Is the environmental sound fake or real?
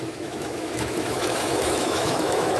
fake